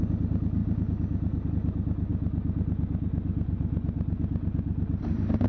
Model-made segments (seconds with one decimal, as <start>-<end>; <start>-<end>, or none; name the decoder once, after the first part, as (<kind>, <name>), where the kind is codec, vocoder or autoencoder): none

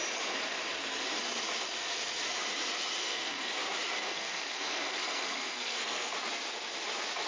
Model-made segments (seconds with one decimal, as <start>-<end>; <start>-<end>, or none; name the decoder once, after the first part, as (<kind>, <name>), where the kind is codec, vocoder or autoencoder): 3.0-3.5 (codec, SNAC); 4.0-6.1

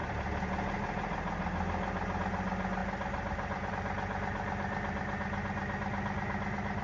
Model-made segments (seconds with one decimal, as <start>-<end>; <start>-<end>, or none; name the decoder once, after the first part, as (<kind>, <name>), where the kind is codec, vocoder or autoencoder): 2.8-3.7 (vocoder, BigVGAN v2)

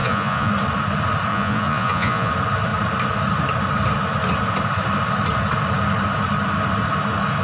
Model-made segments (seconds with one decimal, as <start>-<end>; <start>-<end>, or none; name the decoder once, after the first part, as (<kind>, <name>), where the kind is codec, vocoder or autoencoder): 0.0-0.5 (vocoder, Vocos); 1.3-2.3

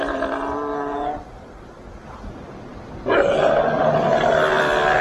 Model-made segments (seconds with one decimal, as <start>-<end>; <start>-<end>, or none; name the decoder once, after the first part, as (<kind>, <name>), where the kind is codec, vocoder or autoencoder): none

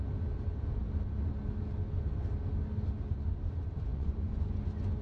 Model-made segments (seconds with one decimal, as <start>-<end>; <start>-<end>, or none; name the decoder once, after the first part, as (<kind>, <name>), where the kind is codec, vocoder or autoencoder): 3.9-4.6 (vocoder, Vocos)

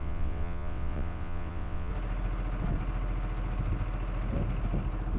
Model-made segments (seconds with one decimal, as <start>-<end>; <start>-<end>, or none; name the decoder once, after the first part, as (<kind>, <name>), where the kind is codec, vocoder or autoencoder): 0.0-1.9 (vocoder, WaveNeXt)